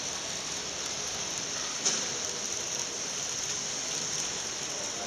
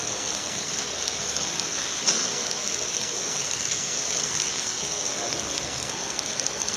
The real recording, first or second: first